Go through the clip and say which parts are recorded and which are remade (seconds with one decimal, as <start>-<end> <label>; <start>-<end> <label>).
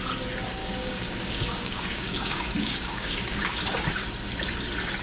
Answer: 0.0-0.6 recorded; 0.6-3.6 remade; 3.6-5.0 recorded